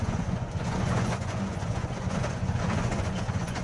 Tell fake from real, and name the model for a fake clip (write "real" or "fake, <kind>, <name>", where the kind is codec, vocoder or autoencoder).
fake, vocoder, Vocos